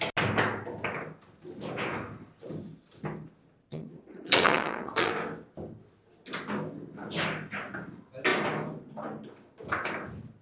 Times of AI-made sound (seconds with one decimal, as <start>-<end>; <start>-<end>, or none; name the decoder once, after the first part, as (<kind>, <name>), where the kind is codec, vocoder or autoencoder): 3.7-5.1 (vocoder, Vocos)